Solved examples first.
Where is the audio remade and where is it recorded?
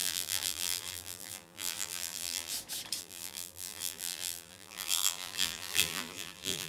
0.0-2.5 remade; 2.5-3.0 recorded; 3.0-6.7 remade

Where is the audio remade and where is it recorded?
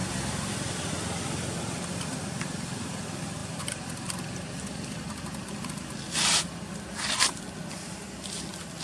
0.0-8.8 recorded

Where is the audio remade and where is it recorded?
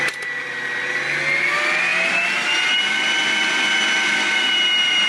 0.0-5.1 recorded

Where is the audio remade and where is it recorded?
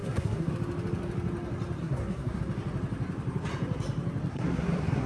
0.0-0.5 remade; 0.5-1.8 recorded; 1.8-2.4 remade; 2.4-4.3 recorded; 4.3-5.1 remade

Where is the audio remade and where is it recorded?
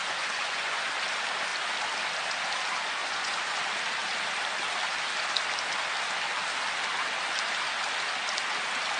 0.0-0.8 remade; 0.8-3.0 recorded; 3.0-3.6 remade; 3.6-9.0 recorded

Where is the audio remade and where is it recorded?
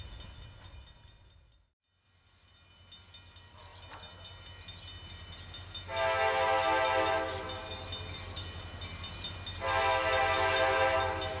0.0-11.4 recorded